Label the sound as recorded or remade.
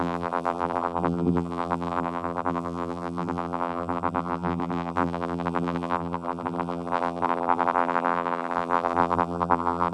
remade